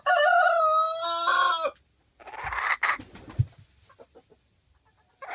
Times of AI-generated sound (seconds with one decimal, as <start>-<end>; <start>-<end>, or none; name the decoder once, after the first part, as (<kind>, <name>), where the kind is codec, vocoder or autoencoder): none